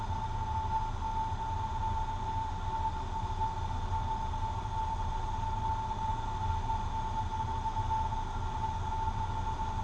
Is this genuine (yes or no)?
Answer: yes